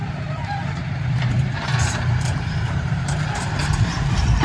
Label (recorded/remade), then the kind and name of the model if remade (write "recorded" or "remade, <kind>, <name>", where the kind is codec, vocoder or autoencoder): remade, vocoder, BigVGAN v2